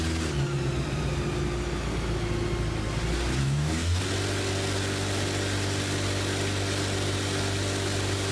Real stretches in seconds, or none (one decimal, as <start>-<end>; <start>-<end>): 0.0-3.4; 4.0-8.3